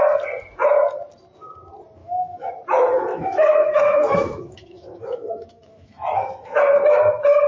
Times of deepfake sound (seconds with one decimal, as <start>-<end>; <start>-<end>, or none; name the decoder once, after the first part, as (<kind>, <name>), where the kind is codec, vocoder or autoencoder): 2.0-2.5 (autoencoder, DAC-VAE); 3.1-6.6